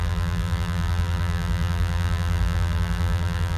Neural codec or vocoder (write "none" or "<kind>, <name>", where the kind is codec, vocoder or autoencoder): vocoder, BigVGAN v2